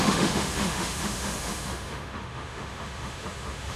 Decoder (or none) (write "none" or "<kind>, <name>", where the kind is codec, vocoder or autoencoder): autoencoder, DAC-VAE